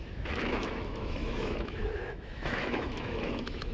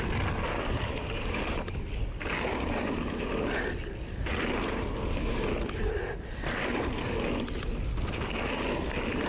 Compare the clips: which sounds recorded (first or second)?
second